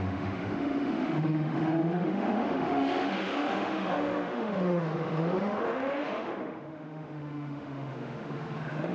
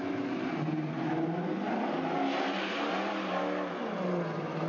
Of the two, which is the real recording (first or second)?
second